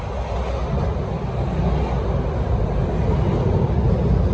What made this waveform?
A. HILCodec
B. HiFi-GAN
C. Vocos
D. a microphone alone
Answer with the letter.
D